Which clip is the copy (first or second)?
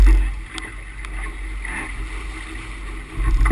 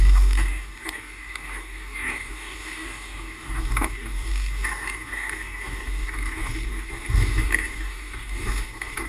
second